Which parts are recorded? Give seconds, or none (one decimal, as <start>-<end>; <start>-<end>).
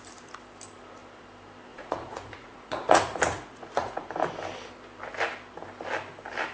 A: 0.0-1.7; 4.1-6.5